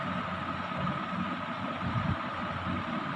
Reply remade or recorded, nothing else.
recorded